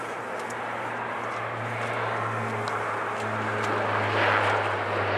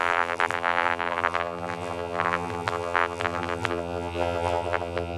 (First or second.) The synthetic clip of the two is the second